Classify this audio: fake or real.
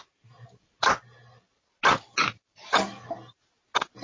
real